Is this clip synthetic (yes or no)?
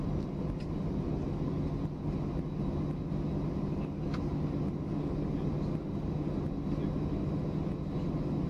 no